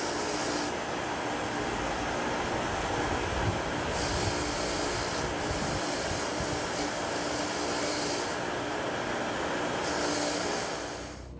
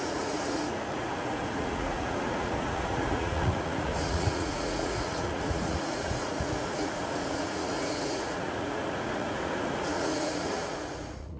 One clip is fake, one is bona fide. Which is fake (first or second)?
second